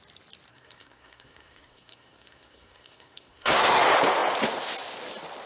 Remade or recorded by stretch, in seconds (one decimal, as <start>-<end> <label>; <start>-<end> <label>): 0.0-0.5 recorded; 0.5-3.8 remade; 3.8-5.5 recorded